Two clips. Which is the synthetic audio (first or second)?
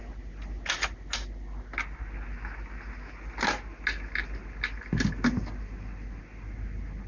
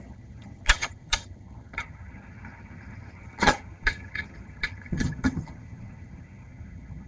second